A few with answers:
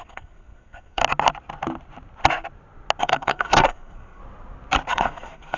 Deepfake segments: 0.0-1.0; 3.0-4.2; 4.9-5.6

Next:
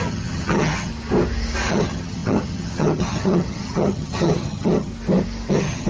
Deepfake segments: 0.0-0.9; 1.7-4.9; 5.5-5.9

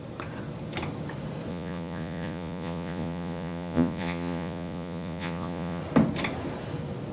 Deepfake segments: 1.5-5.8